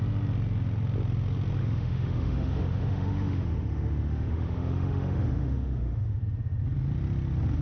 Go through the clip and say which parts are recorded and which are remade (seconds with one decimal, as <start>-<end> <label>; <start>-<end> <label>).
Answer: 0.0-1.6 recorded; 1.6-6.2 remade; 6.2-7.6 recorded